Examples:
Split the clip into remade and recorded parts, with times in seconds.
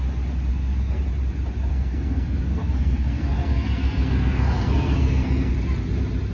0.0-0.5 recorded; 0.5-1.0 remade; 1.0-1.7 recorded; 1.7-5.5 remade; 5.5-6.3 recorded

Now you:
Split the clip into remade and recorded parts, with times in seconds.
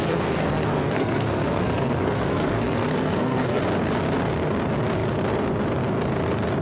0.0-3.6 remade; 3.6-6.6 recorded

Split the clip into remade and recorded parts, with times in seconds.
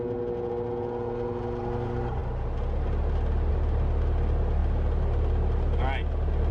0.0-6.5 recorded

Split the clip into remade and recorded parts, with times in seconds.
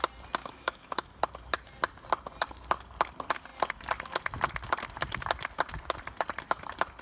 0.0-0.4 recorded; 0.4-1.1 remade; 1.1-7.0 recorded